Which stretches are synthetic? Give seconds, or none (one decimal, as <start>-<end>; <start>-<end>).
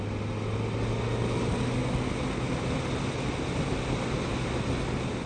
none